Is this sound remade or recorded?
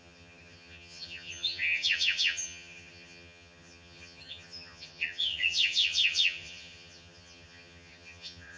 remade